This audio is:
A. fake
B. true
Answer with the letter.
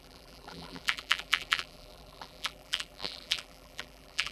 A